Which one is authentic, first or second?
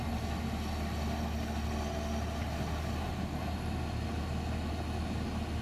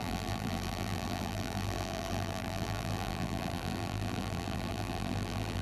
first